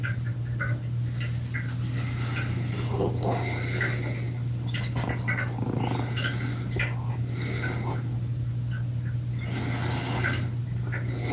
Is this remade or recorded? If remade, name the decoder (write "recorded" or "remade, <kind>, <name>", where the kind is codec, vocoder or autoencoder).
recorded